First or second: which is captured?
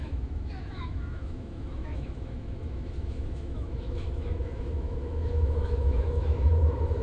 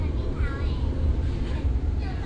second